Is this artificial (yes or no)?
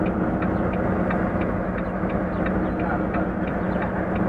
no